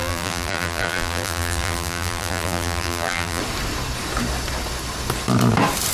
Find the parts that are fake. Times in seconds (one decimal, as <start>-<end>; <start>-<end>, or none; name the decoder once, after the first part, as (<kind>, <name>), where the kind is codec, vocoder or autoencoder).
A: 0.0-3.4 (vocoder, BigVGAN v2)